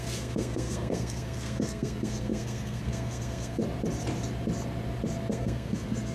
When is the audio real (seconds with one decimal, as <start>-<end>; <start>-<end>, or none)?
3.6-5.3